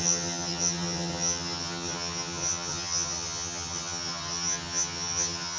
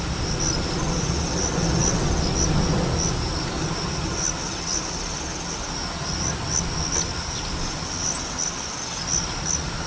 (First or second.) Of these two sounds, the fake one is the first